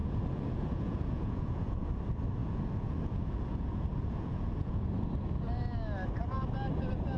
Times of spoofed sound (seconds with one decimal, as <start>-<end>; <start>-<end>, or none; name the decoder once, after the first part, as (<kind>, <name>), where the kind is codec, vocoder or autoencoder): 0.0-1.9 (vocoder, Vocos); 2.4-4.9